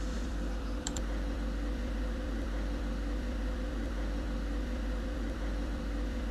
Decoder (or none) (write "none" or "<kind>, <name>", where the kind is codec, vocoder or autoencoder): vocoder, BigVGAN v2